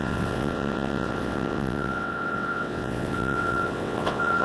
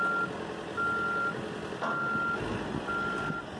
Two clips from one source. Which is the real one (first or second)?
second